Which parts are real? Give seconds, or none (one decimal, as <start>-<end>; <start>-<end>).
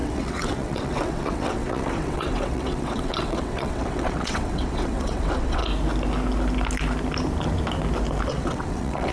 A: 5.6-8.3